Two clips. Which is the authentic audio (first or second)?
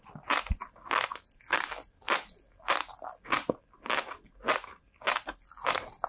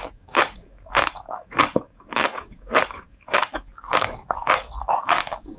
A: first